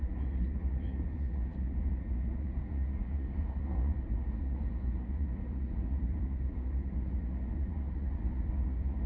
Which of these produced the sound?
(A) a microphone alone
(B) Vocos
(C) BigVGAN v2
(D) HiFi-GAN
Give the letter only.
B